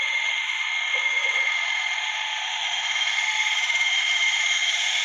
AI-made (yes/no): yes